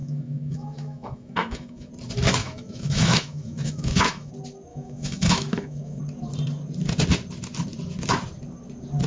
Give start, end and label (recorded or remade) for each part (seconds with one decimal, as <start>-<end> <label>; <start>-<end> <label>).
0.0-1.9 remade; 1.9-2.4 recorded; 2.4-4.3 remade; 4.3-4.7 recorded; 4.7-6.0 remade; 6.0-9.1 recorded